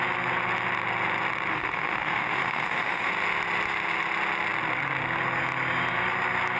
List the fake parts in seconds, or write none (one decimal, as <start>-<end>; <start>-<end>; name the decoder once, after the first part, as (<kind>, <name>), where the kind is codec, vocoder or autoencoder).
1.5-3.1 (autoencoder, DAC-VAE)

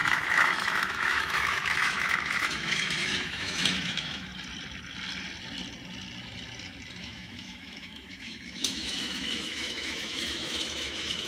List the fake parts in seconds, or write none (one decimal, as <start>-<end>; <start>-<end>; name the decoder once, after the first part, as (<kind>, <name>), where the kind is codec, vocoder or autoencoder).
0.0-4.3 (autoencoder, DAC-VAE); 7.0-11.3

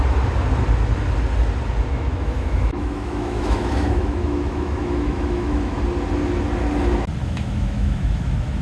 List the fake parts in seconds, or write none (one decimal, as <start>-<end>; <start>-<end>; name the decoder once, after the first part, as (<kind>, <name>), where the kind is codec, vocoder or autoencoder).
1.9-5.8 (autoencoder, DAC-VAE); 7.2-8.6

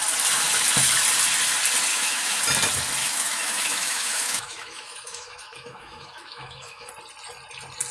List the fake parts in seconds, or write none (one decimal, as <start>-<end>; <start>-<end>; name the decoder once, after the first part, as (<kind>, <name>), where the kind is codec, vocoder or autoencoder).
1.9-2.4 (autoencoder, DAC-VAE); 3.0-6.9